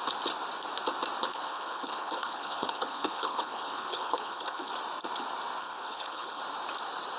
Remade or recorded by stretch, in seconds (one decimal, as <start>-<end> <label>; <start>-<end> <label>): 0.0-1.2 recorded; 1.2-4.7 remade; 4.7-5.6 recorded; 5.6-6.4 remade; 6.4-7.2 recorded